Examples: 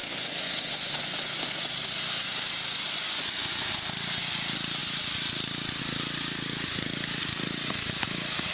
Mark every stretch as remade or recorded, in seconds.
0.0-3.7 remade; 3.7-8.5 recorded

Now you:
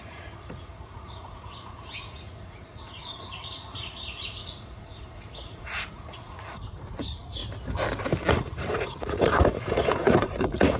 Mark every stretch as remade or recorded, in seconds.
0.0-7.4 remade; 7.4-8.3 recorded; 8.3-10.8 remade

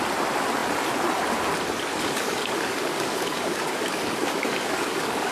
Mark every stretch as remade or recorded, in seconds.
0.0-1.9 recorded; 1.9-5.3 remade